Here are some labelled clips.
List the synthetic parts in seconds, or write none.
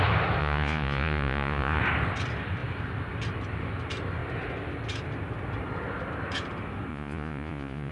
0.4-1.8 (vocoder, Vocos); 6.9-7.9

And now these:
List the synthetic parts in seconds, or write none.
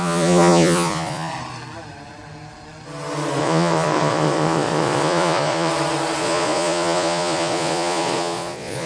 0.0-1.3 (vocoder, Vocos); 3.4-5.7; 6.2-8.9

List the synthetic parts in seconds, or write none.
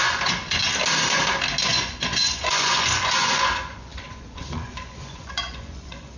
0.0-0.4 (vocoder, Vocos); 1.6-6.2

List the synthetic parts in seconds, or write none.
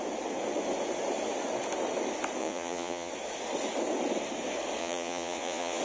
2.4-3.1 (vocoder, Vocos); 4.8-5.8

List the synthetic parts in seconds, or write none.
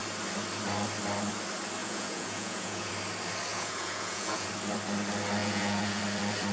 1.8-2.9 (vocoder, Vocos); 3.5-4.5; 5.4-6.0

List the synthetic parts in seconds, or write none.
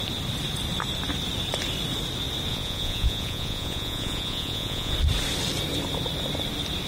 2.5-4.9 (vocoder, Vocos)